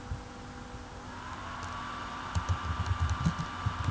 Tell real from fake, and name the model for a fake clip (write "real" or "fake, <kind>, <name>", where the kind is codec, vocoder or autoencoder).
real